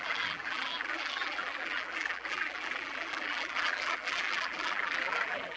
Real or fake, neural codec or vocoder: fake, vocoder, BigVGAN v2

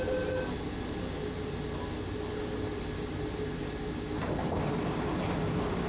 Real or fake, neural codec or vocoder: real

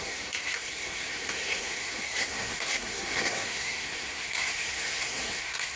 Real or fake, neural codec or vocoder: fake, codec, SNAC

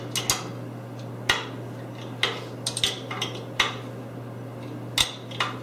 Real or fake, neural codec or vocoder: real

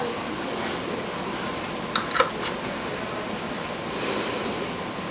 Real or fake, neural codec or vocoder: real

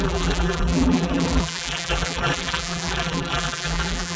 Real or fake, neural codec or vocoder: fake, vocoder, BigVGAN v2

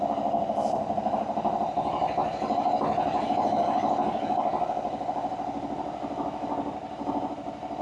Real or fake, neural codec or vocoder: real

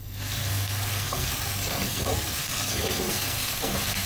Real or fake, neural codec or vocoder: fake, codec, SNAC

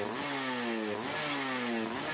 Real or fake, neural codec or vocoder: real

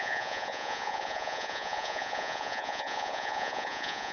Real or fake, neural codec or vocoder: fake, vocoder, Vocos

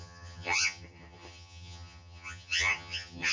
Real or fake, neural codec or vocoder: fake, vocoder, HiFi-GAN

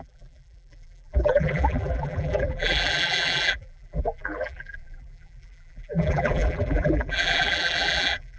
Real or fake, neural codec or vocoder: fake, vocoder, BigVGAN v2